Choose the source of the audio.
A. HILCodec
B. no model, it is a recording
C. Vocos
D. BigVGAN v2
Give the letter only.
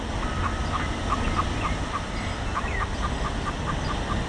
B